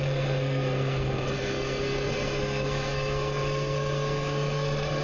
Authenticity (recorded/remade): remade